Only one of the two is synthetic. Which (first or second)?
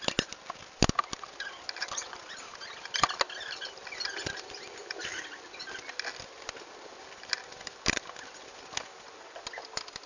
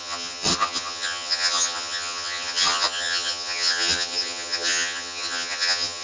second